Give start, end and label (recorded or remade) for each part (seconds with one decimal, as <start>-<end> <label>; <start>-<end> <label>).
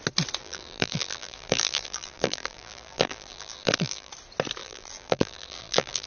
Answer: 0.0-0.4 recorded; 0.4-4.1 remade; 4.1-4.6 recorded; 4.6-6.1 remade